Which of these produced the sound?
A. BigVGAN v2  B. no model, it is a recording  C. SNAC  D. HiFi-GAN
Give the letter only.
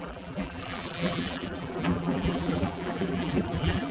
A